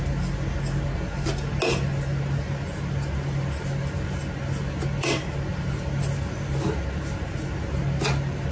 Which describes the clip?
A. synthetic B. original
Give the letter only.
B